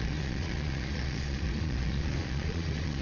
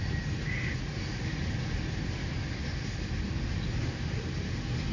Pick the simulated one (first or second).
first